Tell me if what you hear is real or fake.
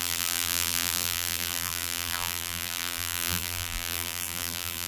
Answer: fake